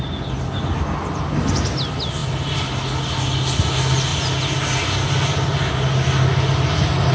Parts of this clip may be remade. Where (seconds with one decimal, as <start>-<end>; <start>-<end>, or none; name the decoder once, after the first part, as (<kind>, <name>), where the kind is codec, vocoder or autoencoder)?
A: none